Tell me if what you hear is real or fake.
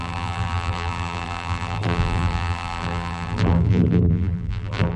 fake